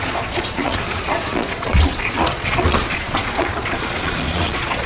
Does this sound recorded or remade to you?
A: remade